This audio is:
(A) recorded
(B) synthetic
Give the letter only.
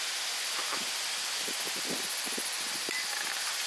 B